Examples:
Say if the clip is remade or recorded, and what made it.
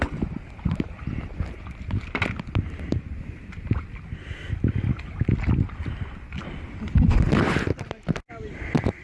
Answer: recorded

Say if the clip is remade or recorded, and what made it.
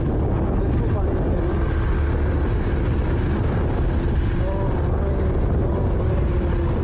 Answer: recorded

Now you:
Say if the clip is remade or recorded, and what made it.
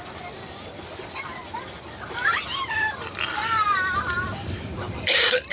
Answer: recorded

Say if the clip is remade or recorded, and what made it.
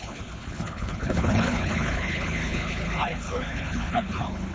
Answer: remade, codec, HILCodec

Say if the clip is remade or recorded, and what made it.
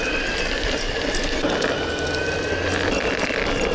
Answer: recorded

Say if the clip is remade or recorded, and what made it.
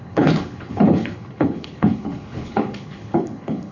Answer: remade, codec, HILCodec